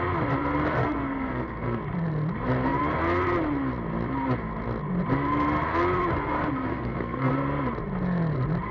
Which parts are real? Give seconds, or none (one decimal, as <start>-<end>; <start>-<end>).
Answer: 0.0-0.8; 1.8-6.7; 7.3-8.7